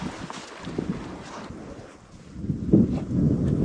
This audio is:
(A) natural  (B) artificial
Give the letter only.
A